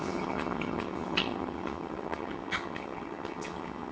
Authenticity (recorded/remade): remade